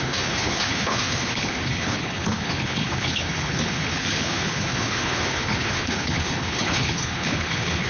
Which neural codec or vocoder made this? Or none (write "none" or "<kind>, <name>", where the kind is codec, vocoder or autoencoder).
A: codec, HILCodec